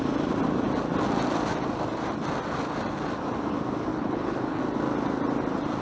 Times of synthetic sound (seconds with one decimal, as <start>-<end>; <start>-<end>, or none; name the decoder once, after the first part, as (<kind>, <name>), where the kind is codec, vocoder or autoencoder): 3.9-4.6 (codec, HILCodec)

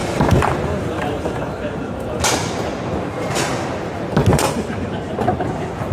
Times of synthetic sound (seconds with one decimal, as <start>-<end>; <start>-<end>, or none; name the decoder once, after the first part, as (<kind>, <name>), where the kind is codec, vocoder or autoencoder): 0.0-2.2 (vocoder, BigVGAN v2); 4.3-5.5

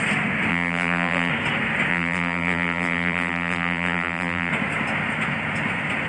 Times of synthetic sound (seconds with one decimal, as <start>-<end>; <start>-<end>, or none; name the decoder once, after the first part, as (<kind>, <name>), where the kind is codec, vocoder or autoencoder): 0.5-1.3 (vocoder, BigVGAN v2); 1.9-4.5

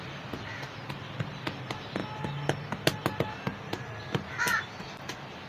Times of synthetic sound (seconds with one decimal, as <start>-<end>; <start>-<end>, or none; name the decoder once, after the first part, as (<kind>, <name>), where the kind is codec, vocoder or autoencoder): none

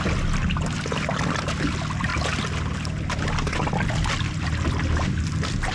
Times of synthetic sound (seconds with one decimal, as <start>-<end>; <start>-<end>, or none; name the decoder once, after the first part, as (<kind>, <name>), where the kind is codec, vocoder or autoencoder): none